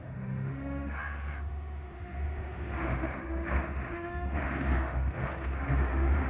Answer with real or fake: fake